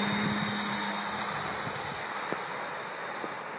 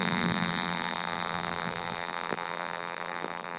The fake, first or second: second